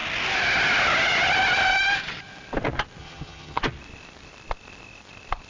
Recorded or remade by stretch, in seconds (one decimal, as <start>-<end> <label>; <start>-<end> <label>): 0.0-3.0 recorded; 3.0-3.6 remade; 3.6-5.5 recorded